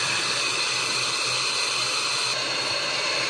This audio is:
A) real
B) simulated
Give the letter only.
B